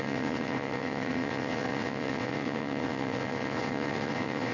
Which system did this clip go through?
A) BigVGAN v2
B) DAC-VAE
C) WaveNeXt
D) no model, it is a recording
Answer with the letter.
C